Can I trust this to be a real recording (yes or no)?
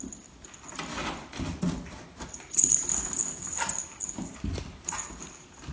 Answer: yes